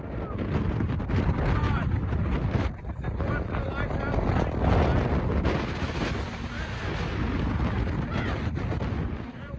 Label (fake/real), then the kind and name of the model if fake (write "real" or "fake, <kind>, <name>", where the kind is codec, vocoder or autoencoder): real